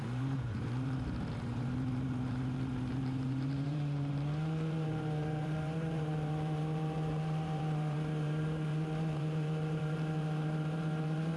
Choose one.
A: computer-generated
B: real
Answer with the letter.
A